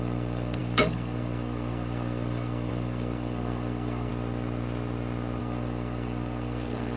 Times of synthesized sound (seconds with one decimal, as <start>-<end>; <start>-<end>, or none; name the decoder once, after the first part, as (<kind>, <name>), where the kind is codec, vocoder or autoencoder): 0.0-4.1 (codec, SNAC); 5.4-7.0